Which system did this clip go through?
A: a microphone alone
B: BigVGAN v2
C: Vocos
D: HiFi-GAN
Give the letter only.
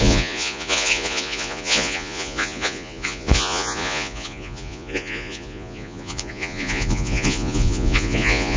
C